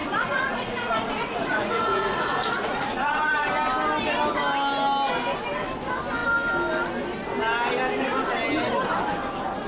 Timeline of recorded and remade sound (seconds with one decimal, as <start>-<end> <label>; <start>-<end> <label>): 0.0-3.5 remade; 3.5-9.7 recorded

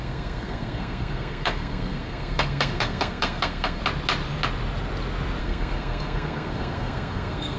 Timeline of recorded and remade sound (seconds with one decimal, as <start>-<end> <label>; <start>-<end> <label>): 0.0-3.8 remade; 3.8-5.4 recorded; 5.4-7.6 remade

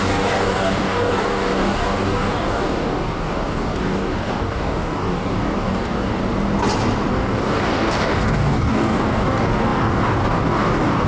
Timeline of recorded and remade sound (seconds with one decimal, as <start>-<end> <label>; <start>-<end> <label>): 0.0-6.2 remade; 6.2-7.1 recorded; 7.1-11.1 remade

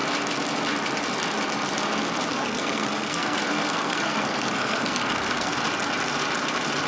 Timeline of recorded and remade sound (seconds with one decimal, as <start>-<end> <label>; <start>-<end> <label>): 0.0-2.3 recorded; 2.3-5.5 remade; 5.5-6.9 recorded